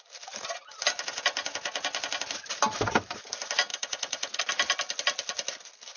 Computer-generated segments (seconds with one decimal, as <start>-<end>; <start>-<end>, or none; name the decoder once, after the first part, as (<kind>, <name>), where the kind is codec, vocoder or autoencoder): 3.7-4.4 (vocoder, Vocos)